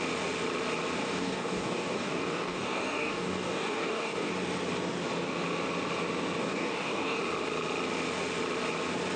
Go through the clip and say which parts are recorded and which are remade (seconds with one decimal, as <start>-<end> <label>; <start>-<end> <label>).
0.0-1.0 recorded; 1.0-4.3 remade; 4.3-6.4 recorded; 6.4-7.2 remade; 7.2-9.2 recorded